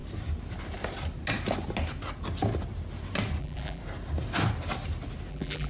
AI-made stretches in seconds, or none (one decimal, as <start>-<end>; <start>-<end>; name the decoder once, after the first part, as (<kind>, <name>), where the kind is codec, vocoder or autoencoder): 3.4-3.8 (vocoder, BigVGAN v2); 5.3-5.7